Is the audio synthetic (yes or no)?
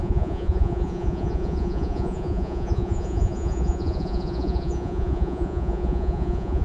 yes